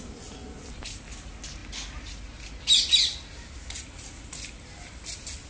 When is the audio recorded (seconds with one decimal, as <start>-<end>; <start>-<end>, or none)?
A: 0.0-5.5